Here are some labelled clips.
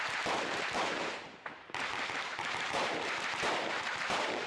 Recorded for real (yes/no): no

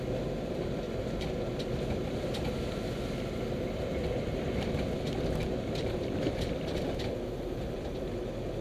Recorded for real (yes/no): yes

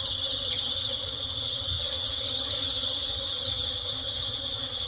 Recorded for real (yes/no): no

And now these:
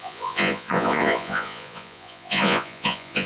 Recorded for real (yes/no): no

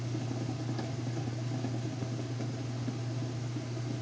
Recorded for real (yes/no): yes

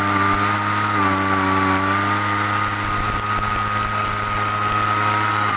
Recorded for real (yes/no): yes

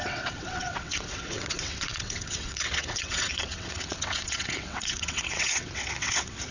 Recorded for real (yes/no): no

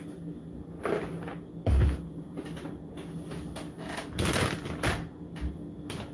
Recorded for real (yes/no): yes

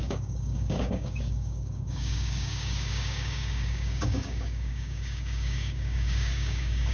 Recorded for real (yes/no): no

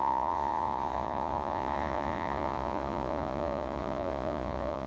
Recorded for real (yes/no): no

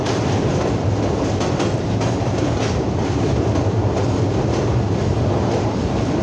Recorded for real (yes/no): yes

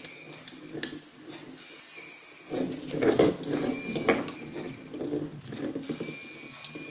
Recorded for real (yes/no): yes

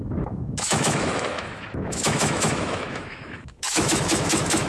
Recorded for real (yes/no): no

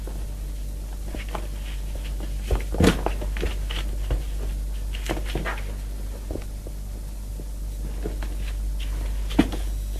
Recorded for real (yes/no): yes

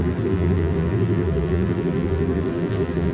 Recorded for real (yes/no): no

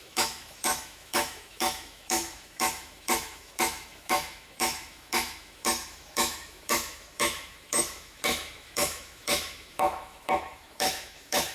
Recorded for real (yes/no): no